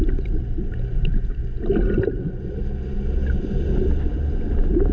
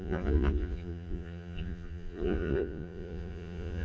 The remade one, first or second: second